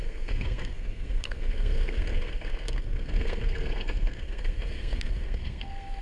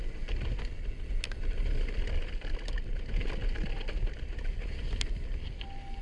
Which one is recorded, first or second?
second